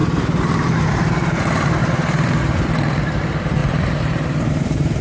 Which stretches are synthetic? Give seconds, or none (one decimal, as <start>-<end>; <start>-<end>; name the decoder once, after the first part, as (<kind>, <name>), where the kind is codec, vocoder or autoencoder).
3.6-5.0 (vocoder, BigVGAN v2)